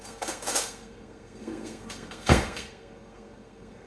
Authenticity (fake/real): fake